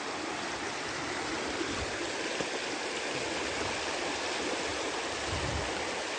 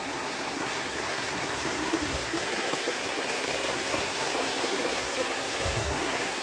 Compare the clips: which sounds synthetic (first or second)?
second